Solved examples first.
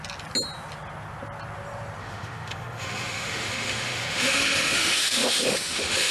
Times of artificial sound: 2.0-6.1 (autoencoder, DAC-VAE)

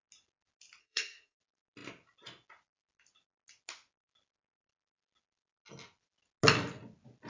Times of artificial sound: 0.8-1.4 (codec, SNAC)

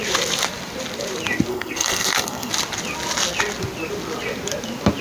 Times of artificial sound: 1.5-2.5 (codec, SNAC)

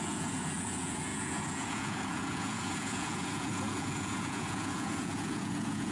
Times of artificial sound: 0.0-5.9 (vocoder, Vocos)

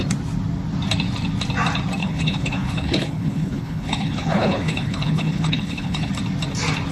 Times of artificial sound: 2.0-6.1 (codec, HILCodec)

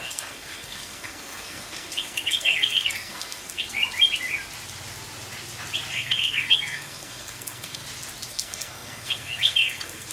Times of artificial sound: 0.0-3.8 (codec, SNAC); 5.9-7.8; 8.3-10.1